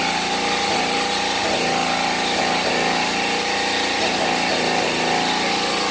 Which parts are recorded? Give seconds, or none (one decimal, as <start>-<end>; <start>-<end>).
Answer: 0.0-5.9